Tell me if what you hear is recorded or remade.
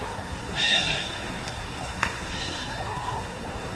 remade